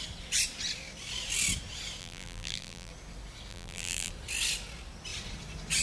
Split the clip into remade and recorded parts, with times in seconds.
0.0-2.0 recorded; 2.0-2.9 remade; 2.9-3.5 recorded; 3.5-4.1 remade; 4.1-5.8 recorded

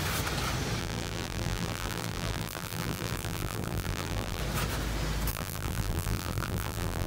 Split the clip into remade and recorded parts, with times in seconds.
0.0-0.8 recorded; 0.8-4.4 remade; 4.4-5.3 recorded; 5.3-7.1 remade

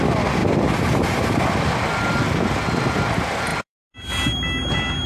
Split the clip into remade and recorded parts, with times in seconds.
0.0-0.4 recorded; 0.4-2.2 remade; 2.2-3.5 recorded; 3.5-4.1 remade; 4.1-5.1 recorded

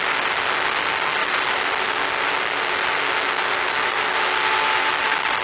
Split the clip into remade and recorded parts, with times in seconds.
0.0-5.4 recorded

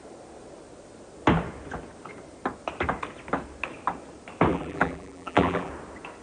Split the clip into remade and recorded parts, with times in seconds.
0.0-4.5 recorded; 4.5-5.7 remade; 5.7-6.2 recorded

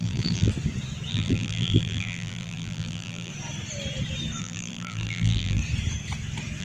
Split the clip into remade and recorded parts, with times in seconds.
0.0-0.5 remade; 0.5-1.1 recorded; 1.1-3.3 remade; 3.3-4.4 recorded; 4.4-5.6 remade; 5.6-6.6 recorded

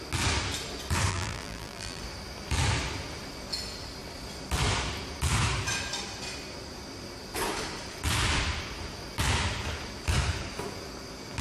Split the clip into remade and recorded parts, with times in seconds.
0.0-1.1 recorded; 1.1-2.0 remade; 2.0-11.4 recorded